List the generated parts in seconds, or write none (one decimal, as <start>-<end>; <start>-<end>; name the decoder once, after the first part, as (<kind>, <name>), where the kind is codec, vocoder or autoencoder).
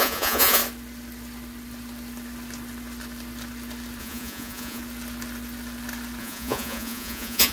0.0-0.6 (vocoder, Vocos); 4.0-4.8; 6.2-7.5